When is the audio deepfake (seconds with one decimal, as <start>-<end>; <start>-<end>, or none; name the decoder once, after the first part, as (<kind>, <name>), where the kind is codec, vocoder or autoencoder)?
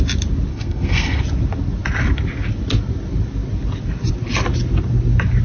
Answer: 0.5-1.2 (codec, SNAC)